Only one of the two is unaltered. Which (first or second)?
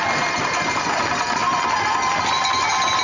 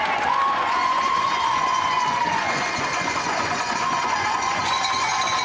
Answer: first